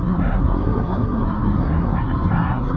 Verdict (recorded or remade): remade